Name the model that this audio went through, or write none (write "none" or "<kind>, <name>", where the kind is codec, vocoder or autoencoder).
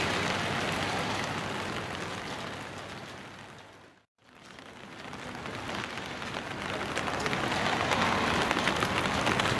none